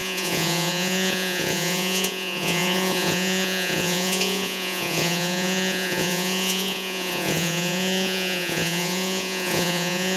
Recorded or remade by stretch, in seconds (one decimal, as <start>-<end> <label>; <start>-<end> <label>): 0.0-10.2 remade